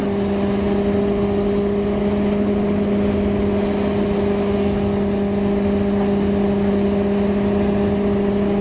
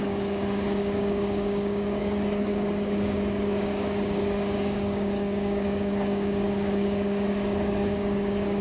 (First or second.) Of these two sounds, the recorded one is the first